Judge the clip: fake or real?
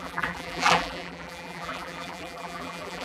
fake